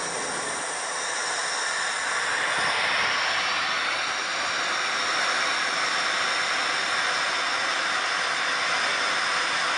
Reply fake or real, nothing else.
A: real